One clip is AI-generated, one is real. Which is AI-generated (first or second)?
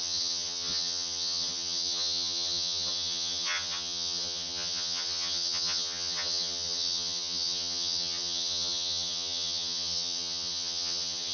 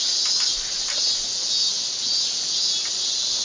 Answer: first